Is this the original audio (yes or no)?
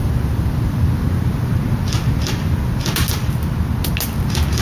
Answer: yes